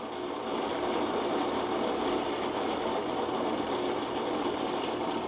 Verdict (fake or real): real